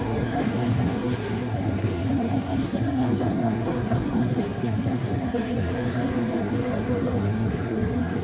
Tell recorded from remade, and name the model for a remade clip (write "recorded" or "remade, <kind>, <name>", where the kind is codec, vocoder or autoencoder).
remade, codec, SNAC